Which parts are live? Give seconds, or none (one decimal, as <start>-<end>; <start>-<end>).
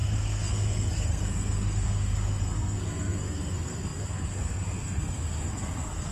none